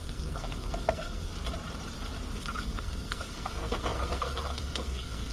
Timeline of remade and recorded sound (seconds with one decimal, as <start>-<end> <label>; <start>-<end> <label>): 0.0-1.3 remade; 1.3-2.4 recorded; 2.4-5.3 remade